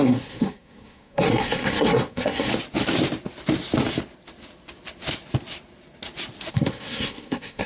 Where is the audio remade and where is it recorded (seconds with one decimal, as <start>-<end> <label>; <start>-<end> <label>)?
0.0-2.5 remade; 2.5-6.5 recorded; 6.5-7.7 remade